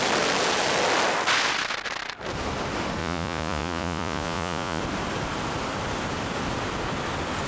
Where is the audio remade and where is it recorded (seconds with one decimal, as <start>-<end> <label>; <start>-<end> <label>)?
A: 0.0-3.0 recorded; 3.0-4.8 remade; 4.8-7.5 recorded